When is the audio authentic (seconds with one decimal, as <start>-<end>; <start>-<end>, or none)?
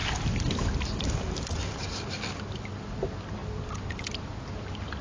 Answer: 0.0-5.0